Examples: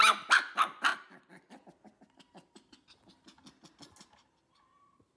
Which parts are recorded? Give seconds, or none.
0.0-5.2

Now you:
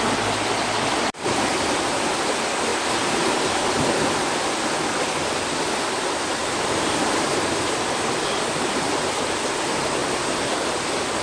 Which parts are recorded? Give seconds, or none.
0.0-6.4; 7.4-11.2